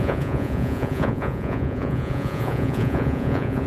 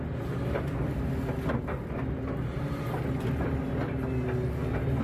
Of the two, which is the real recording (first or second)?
second